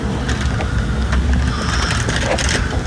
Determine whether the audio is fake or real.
real